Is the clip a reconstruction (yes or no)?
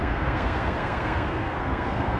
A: yes